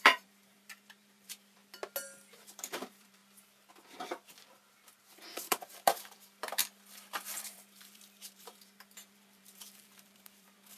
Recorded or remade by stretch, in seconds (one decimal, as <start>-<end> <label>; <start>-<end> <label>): 0.0-1.6 remade; 1.6-2.3 recorded; 2.3-3.2 remade; 3.2-5.5 recorded; 5.5-6.6 remade; 6.6-7.4 recorded; 7.4-10.8 remade